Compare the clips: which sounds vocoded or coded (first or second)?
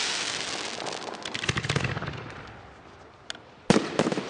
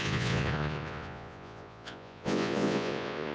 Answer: second